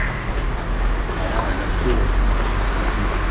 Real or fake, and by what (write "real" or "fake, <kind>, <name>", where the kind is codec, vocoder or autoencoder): real